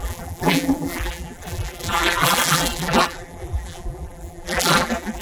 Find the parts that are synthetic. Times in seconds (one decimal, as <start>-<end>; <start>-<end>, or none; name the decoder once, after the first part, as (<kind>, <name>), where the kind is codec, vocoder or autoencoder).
0.0-5.2 (vocoder, BigVGAN v2)